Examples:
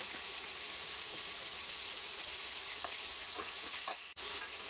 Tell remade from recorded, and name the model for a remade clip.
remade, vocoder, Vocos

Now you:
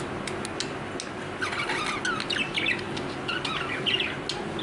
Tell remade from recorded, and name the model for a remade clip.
recorded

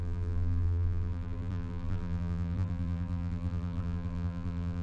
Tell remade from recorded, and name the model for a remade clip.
remade, vocoder, BigVGAN v2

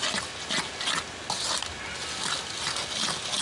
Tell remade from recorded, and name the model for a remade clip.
recorded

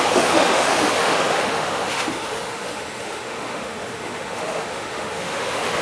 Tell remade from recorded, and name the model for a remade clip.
remade, autoencoder, DAC-VAE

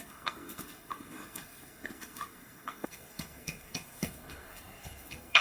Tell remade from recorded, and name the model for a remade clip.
remade, codec, SNAC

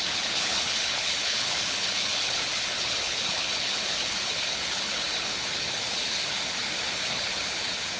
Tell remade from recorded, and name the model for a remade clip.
remade, codec, HILCodec